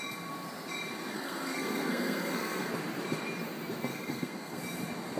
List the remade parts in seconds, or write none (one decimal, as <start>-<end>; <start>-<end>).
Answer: 1.1-2.7; 3.9-4.6